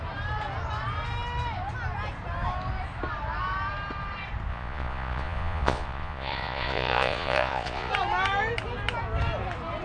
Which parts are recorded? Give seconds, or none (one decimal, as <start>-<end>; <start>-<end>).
0.0-4.5; 7.9-9.8